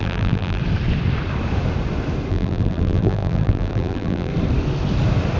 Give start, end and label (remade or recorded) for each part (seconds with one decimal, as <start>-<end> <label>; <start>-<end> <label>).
0.0-0.6 remade; 0.6-2.3 recorded; 2.3-4.3 remade; 4.3-5.4 recorded